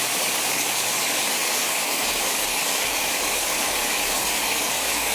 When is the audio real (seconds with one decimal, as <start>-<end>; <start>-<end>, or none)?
none